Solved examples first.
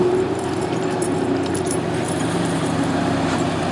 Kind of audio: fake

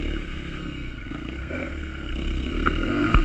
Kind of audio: fake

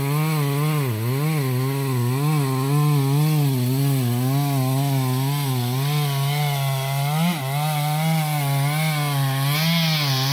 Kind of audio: real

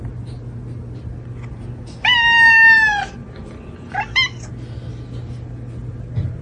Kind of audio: real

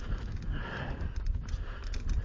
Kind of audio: real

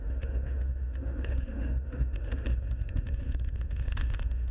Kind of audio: fake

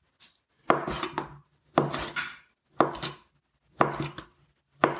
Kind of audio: real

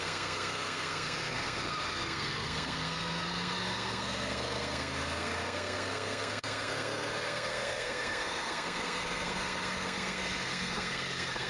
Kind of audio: fake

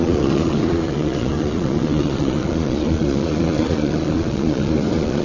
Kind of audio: fake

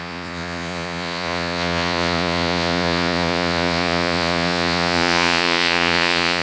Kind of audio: fake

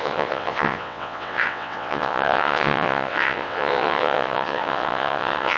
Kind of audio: fake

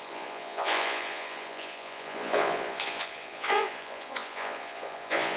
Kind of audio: fake